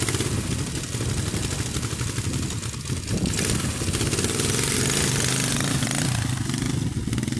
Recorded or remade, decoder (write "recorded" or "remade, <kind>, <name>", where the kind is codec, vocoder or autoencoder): recorded